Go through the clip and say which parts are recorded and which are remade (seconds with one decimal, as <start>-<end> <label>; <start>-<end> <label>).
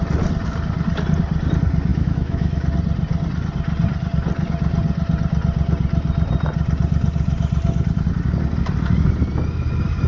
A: 0.0-1.9 recorded; 1.9-2.6 remade; 2.6-10.1 recorded